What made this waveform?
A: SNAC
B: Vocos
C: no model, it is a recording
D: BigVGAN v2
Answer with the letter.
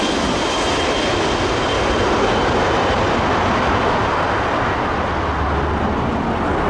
C